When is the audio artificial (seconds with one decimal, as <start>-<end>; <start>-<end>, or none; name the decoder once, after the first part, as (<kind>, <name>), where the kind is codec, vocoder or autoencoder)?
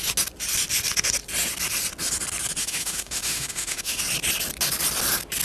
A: 2.6-4.0 (autoencoder, DAC-VAE)